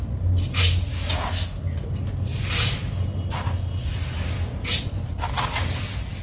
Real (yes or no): yes